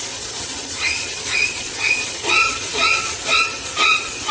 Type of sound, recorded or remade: remade